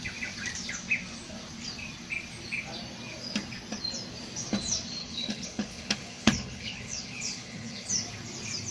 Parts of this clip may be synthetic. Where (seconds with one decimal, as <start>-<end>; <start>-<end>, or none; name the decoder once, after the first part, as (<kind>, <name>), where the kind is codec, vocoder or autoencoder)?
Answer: 5.0-7.9 (codec, HILCodec)